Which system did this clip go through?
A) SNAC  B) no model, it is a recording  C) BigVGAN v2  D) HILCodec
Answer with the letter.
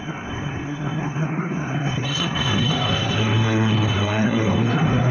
A